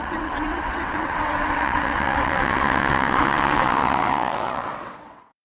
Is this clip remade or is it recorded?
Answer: remade